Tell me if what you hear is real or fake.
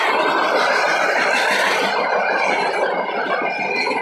real